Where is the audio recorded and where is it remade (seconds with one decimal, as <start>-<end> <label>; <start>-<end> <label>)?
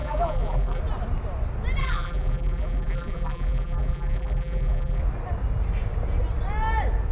0.0-0.8 remade; 0.8-1.8 recorded; 1.8-5.0 remade; 5.0-7.1 recorded